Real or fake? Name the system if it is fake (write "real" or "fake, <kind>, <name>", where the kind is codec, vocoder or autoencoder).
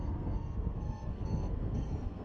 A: fake, codec, SNAC